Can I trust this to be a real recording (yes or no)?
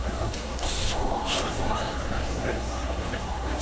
no